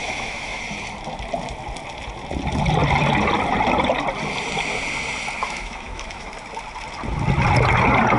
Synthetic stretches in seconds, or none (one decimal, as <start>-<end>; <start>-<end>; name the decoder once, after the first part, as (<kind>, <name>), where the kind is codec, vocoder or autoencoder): 0.0-0.6 (autoencoder, DAC-VAE); 5.4-6.3